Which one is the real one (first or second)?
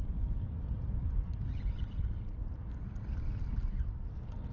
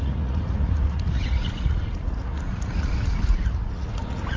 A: first